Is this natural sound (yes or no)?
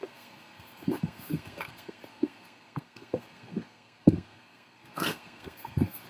no